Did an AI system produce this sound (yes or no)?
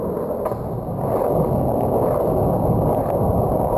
no